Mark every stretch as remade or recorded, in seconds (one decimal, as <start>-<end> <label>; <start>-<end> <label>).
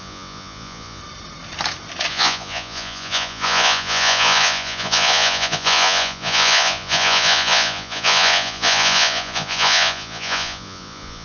0.0-1.0 remade; 1.0-2.1 recorded; 2.1-11.2 remade